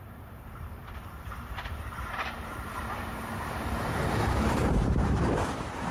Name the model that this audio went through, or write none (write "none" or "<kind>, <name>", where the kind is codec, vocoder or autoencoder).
vocoder, BigVGAN v2